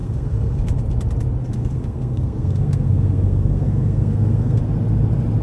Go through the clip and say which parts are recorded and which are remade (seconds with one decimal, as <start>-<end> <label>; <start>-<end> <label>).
0.0-0.8 remade; 0.8-1.4 recorded; 1.4-4.6 remade; 4.6-5.4 recorded